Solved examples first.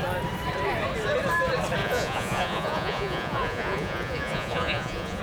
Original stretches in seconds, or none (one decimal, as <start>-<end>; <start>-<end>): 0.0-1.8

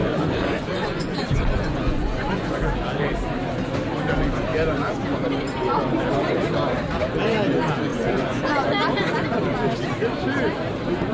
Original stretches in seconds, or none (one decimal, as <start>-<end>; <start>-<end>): 2.6-7.9; 8.5-11.1

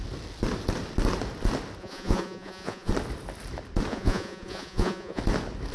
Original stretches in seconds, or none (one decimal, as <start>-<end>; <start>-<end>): 0.0-1.8; 2.9-3.9; 5.2-5.7

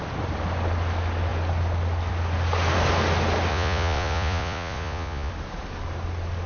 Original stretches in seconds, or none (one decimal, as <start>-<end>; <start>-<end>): 0.0-3.5; 5.3-6.5

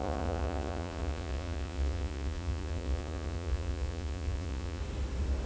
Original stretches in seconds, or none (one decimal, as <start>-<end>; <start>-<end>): 4.8-5.5

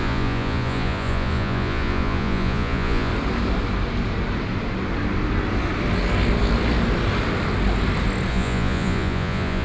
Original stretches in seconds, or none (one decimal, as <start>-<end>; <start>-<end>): 3.1-8.3